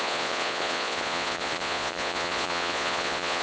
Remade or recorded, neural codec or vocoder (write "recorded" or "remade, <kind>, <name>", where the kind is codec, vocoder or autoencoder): remade, vocoder, Vocos